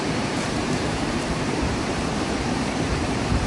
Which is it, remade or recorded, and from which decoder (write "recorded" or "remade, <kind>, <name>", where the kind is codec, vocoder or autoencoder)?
remade, vocoder, BigVGAN v2